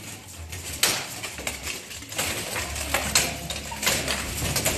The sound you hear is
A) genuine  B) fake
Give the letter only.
A